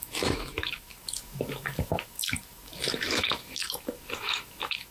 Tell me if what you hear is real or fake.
fake